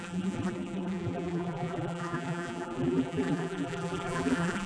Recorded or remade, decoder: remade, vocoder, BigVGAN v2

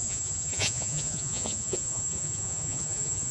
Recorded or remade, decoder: remade, vocoder, Vocos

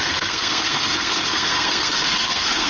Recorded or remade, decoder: remade, codec, SNAC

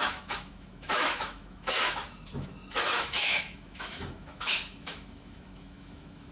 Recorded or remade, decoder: remade, autoencoder, DAC-VAE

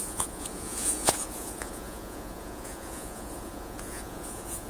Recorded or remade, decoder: remade, vocoder, Vocos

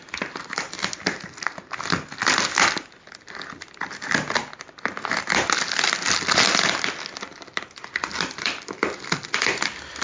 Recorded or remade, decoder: recorded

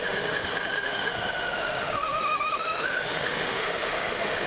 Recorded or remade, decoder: remade, autoencoder, DAC-VAE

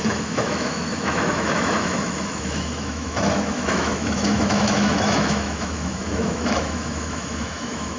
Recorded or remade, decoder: remade, autoencoder, DAC-VAE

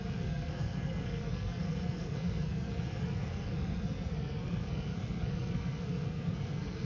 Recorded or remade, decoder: remade, codec, SNAC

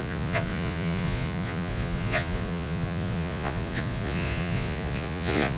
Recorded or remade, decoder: remade, vocoder, Vocos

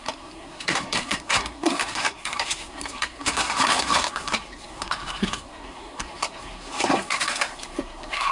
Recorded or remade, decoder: remade, codec, SNAC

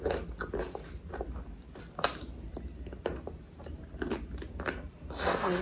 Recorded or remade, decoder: recorded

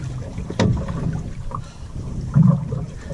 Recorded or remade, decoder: remade, vocoder, BigVGAN v2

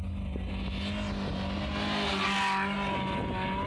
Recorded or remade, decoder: recorded